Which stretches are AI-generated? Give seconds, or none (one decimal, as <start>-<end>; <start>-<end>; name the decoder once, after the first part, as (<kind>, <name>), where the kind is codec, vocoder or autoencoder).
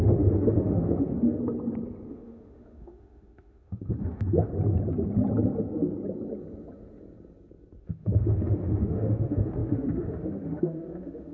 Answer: 0.0-1.4 (autoencoder, DAC-VAE); 2.1-4.5; 7.8-11.3